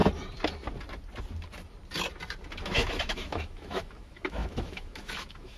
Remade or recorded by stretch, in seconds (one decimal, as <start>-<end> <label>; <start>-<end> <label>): 0.0-2.6 recorded; 2.6-5.6 remade